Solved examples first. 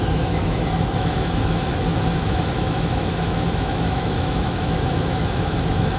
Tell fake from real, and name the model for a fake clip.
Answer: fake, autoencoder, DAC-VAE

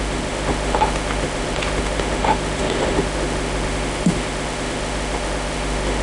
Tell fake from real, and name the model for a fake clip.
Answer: fake, autoencoder, DAC-VAE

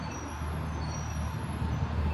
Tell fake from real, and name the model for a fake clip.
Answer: real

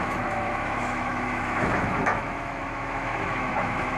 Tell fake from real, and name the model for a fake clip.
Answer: fake, autoencoder, DAC-VAE